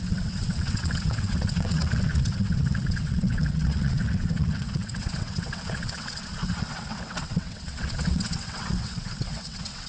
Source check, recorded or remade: remade